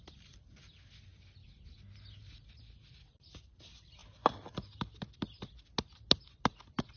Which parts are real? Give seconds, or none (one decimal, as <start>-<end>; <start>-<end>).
0.0-7.0